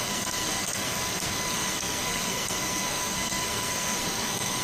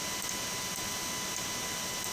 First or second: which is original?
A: second